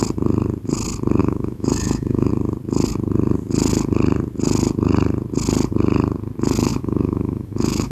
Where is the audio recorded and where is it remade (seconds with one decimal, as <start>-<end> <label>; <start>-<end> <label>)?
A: 0.0-1.2 recorded; 1.2-2.3 remade; 2.3-6.7 recorded; 6.7-7.9 remade